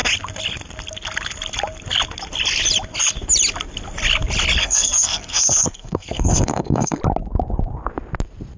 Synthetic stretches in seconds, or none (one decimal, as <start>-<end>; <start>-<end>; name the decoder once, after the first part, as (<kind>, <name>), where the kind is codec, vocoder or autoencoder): 4.6-7.0 (codec, SNAC)